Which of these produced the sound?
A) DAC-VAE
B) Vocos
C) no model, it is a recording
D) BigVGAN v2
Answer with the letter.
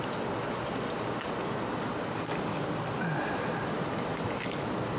C